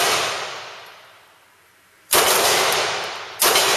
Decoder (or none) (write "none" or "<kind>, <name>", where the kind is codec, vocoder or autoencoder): none